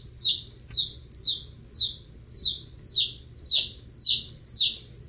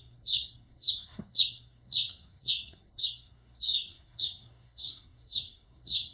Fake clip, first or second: second